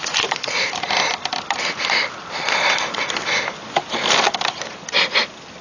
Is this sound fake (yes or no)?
no